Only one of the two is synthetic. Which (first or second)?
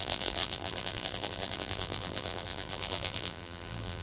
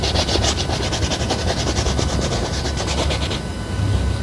first